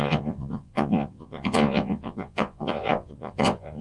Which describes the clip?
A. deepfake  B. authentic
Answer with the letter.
A